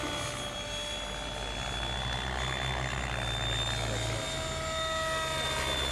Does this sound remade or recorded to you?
recorded